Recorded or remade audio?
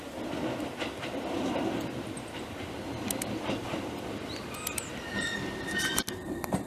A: recorded